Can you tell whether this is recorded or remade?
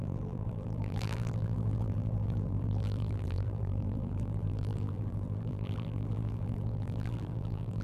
remade